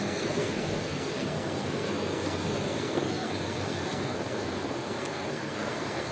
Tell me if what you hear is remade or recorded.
remade